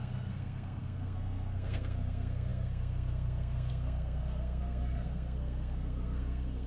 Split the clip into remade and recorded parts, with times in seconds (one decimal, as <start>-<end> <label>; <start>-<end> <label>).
0.0-6.7 remade